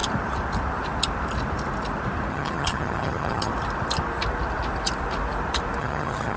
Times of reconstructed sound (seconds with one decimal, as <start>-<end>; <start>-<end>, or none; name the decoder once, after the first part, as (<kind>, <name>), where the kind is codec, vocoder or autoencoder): 2.3-3.5 (vocoder, HiFi-GAN); 5.8-6.4